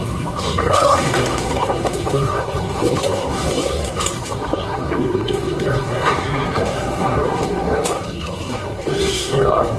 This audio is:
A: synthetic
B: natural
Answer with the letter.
A